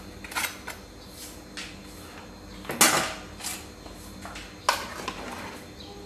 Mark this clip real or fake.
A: real